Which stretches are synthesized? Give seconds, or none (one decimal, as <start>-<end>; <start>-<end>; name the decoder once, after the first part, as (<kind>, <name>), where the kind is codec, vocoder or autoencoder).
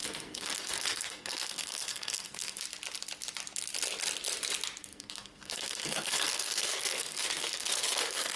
0.0-2.6 (codec, SNAC); 4.8-8.4